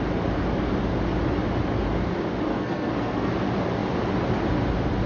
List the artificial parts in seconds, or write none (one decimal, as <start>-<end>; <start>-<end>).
2.5-3.3